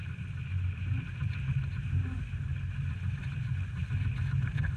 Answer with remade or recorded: recorded